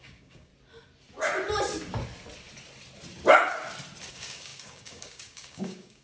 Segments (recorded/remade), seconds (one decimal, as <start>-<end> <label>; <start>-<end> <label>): 0.0-0.5 remade; 0.5-4.1 recorded; 4.1-6.0 remade